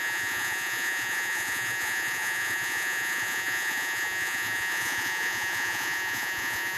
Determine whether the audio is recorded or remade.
remade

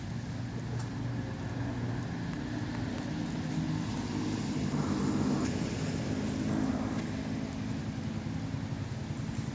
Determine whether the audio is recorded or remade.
recorded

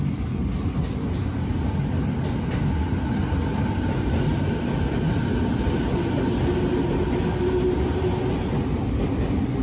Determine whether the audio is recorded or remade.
recorded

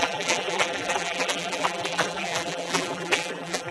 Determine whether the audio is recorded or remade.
remade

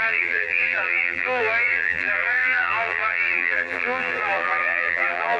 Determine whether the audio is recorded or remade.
remade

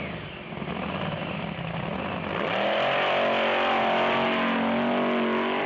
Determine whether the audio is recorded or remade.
recorded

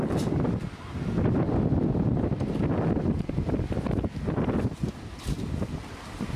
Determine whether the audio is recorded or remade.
recorded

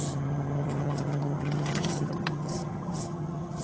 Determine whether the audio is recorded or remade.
remade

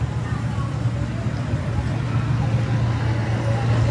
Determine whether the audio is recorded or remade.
recorded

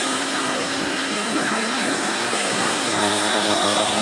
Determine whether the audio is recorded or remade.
remade